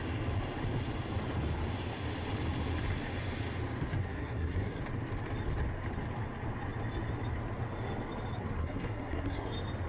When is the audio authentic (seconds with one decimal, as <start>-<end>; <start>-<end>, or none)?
0.0-4.0; 4.8-8.6; 9.5-9.9

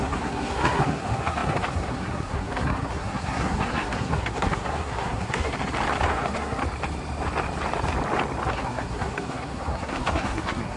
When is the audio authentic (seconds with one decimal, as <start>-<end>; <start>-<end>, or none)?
5.6-6.1; 6.6-8.5